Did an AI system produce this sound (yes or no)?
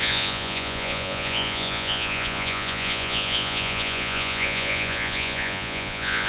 yes